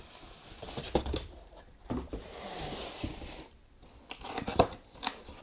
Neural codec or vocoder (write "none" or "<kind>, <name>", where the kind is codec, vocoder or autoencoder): none